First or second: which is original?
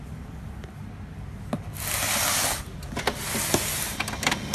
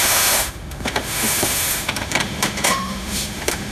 first